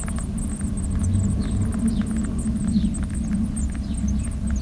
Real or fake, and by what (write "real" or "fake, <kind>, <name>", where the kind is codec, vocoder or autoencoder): real